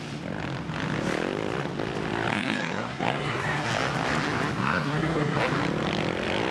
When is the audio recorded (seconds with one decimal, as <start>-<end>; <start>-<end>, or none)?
0.0-2.3; 3.7-4.6; 5.4-6.5